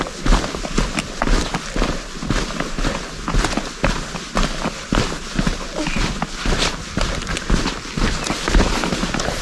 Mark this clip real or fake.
real